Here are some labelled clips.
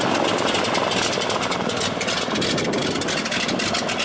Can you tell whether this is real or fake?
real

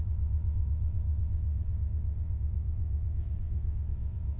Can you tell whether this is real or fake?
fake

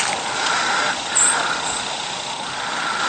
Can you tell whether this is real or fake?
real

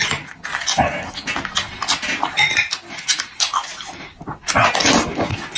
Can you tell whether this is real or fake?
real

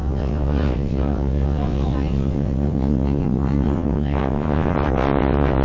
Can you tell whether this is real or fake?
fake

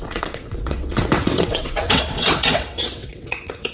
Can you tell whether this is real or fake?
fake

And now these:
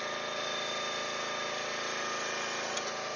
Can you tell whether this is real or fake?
real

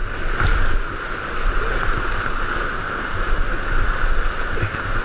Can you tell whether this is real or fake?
real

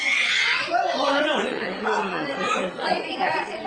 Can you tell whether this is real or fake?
fake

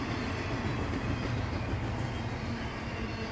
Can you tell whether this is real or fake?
real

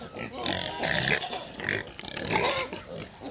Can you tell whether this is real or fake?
real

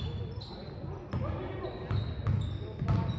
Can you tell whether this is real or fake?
real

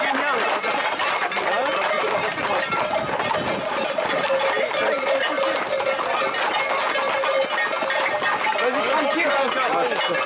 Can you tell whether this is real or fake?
real